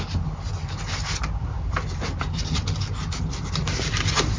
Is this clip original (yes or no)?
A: yes